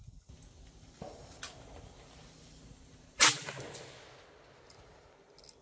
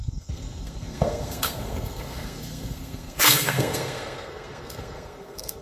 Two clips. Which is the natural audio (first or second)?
first